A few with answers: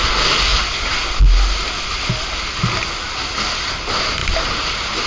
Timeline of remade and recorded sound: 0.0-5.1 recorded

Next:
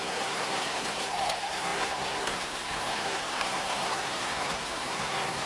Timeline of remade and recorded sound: 0.0-5.5 remade

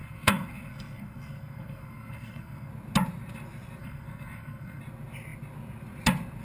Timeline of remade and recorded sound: 0.0-2.7 remade; 2.7-3.8 recorded; 3.8-4.8 remade; 4.8-6.4 recorded

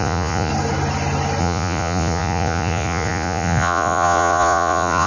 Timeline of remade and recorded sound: 0.0-0.5 remade; 0.5-1.4 recorded; 1.4-5.1 remade

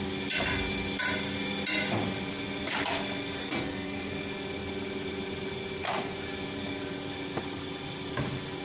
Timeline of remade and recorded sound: 0.0-3.4 recorded; 3.4-4.1 remade; 4.1-8.6 recorded